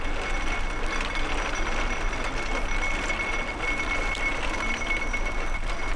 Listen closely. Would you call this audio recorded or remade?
recorded